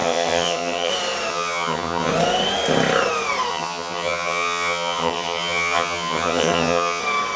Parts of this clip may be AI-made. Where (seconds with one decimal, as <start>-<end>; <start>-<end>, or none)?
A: 0.0-0.9; 1.3-2.1; 3.5-7.0